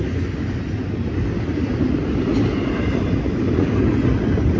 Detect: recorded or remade recorded